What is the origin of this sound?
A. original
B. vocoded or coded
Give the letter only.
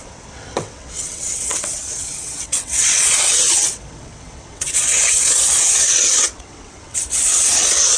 B